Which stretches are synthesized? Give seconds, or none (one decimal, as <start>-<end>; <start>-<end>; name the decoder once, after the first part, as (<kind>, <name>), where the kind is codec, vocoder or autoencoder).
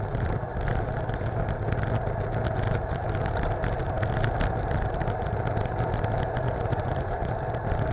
6.7-7.3 (vocoder, Vocos)